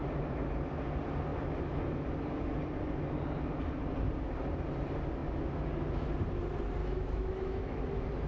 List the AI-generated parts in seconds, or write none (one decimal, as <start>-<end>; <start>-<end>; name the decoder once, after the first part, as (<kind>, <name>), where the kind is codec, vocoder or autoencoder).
6.8-7.8 (autoencoder, DAC-VAE)